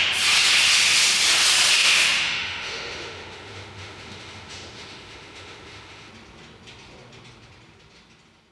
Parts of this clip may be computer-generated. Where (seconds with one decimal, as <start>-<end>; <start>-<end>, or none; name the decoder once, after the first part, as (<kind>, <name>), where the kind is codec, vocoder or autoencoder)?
1.8-6.1 (autoencoder, DAC-VAE)